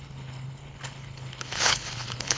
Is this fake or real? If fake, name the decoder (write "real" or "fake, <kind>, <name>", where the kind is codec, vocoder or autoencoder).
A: fake, codec, HILCodec